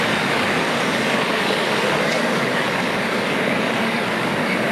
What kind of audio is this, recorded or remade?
remade